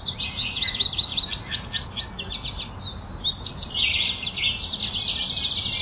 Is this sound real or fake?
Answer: real